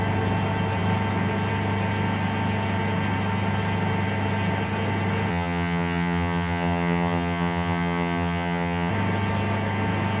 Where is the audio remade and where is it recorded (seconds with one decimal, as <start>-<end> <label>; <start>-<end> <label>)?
0.0-5.3 recorded; 5.3-8.9 remade; 8.9-10.2 recorded